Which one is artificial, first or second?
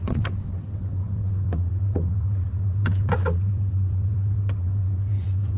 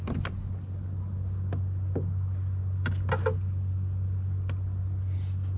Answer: first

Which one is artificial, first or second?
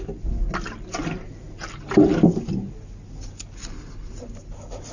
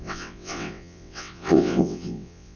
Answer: second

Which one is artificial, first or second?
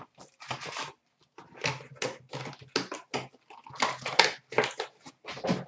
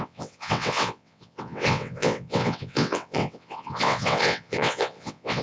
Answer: second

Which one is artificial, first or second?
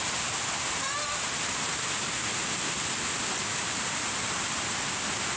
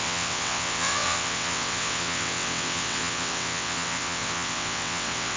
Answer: second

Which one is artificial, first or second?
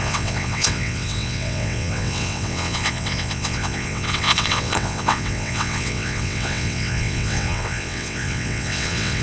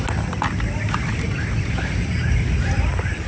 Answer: first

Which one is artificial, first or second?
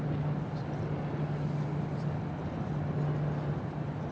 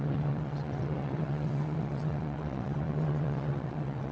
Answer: second